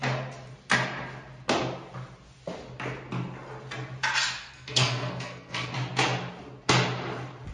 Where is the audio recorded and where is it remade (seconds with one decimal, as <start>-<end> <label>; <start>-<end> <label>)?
0.0-4.4 recorded; 4.4-5.7 remade; 5.7-7.5 recorded